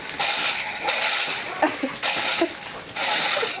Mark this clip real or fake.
fake